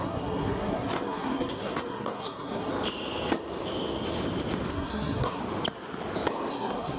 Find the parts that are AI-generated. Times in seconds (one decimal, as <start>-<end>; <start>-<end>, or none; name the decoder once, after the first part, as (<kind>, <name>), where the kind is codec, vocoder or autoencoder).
0.0-2.7 (codec, SNAC); 4.7-5.4; 6.5-7.0